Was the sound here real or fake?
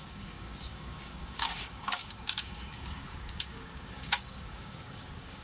fake